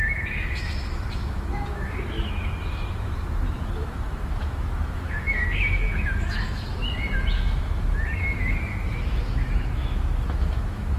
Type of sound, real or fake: fake